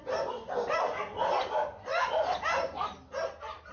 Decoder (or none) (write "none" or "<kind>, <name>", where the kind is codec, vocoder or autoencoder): none